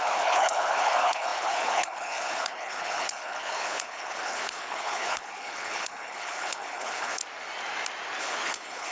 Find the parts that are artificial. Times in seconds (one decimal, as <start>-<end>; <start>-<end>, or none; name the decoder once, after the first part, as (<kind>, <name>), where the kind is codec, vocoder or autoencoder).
0.0-7.2 (codec, HILCodec); 8.2-8.9